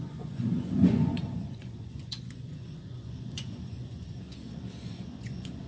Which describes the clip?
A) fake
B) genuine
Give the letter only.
A